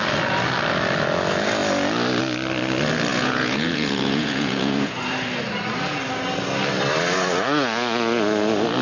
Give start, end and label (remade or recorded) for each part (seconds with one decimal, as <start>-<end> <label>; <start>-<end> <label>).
0.0-3.1 recorded; 3.1-5.0 remade; 5.0-8.8 recorded